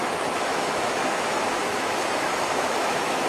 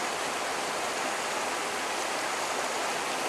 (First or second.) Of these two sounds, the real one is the second